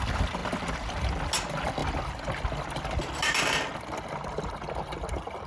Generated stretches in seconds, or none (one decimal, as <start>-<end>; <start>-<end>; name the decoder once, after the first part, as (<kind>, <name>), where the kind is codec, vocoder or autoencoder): none

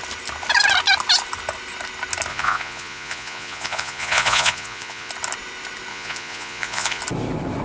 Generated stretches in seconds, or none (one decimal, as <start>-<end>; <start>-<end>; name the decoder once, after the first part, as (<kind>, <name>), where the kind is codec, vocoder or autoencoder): 2.3-5.1 (vocoder, Vocos); 5.9-7.0

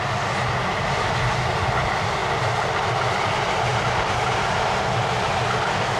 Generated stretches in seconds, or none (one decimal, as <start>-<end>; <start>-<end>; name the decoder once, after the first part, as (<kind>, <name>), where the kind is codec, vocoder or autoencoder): none

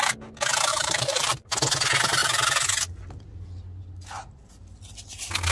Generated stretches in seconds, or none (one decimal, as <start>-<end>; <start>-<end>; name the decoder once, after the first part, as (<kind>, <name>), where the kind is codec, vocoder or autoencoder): 0.7-1.3 (vocoder, BigVGAN v2)

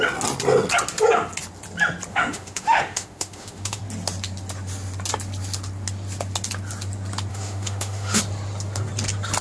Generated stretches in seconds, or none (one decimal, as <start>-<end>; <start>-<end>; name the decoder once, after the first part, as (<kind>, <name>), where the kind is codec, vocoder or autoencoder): 2.1-3.8 (autoencoder, DAC-VAE); 7.3-8.2

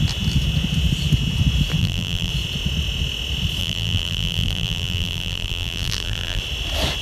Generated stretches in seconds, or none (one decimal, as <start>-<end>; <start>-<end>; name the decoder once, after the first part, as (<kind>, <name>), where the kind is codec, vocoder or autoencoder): 1.8-2.3 (vocoder, BigVGAN v2); 3.6-6.4